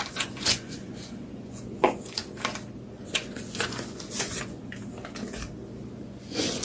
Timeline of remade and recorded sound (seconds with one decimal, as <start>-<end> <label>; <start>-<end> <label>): 0.0-2.2 remade; 2.2-2.9 recorded; 2.9-4.8 remade; 4.8-6.0 recorded; 6.0-6.6 remade